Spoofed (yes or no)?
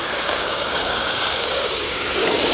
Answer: yes